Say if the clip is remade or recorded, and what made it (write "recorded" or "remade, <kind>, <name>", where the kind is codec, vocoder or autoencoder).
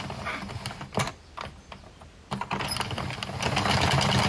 recorded